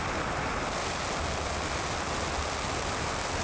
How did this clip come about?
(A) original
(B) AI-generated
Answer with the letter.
A